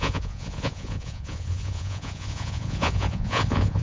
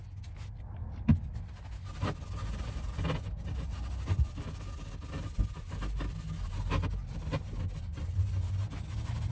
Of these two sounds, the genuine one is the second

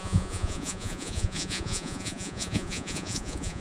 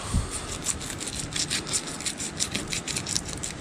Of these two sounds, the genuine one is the second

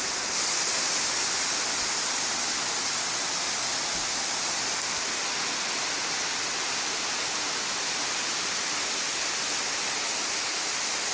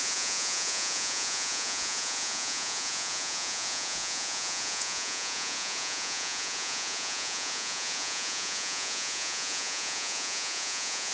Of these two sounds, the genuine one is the first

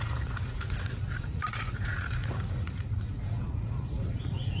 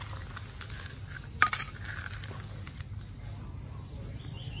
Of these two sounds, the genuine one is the second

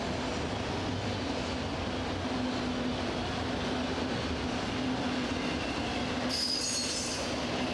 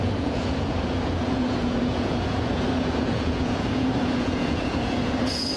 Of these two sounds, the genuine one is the first